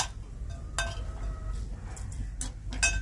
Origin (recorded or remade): recorded